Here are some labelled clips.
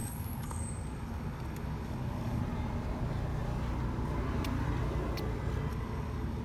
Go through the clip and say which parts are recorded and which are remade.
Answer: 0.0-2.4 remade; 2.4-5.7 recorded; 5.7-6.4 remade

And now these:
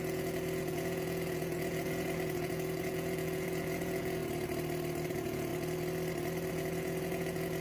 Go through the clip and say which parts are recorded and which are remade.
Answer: 0.0-4.2 remade; 4.2-5.1 recorded; 5.1-5.5 remade; 5.5-6.5 recorded; 6.5-7.6 remade